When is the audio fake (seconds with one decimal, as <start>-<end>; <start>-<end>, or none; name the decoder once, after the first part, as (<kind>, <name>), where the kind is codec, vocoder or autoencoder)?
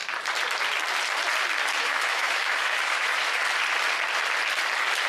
1.8-3.4 (autoencoder, DAC-VAE)